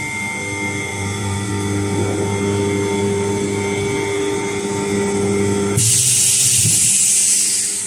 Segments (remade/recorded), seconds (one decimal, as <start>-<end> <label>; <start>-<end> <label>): 0.0-0.9 recorded; 0.9-1.5 remade; 1.5-7.9 recorded